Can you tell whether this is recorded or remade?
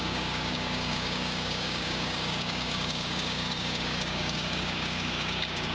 remade